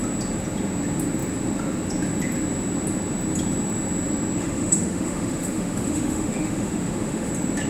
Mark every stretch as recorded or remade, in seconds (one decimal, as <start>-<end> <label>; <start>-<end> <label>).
0.0-4.4 recorded; 4.4-7.3 remade; 7.3-7.7 recorded